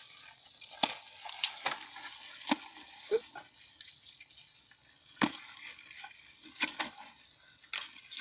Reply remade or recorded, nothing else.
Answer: recorded